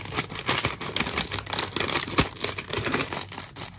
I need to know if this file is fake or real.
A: real